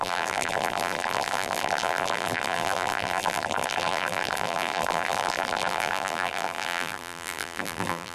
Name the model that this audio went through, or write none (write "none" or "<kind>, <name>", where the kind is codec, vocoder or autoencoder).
vocoder, BigVGAN v2